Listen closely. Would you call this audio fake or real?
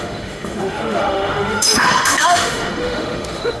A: fake